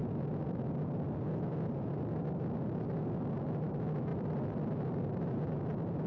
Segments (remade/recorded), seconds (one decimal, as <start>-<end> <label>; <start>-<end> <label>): 0.0-3.3 remade; 3.3-4.1 recorded; 4.1-5.2 remade; 5.2-6.1 recorded